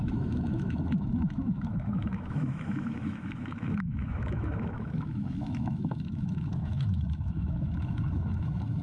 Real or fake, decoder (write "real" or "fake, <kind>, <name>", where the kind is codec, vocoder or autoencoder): fake, autoencoder, DAC-VAE